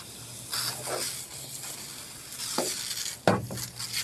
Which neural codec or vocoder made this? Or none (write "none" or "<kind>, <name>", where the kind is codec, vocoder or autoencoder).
none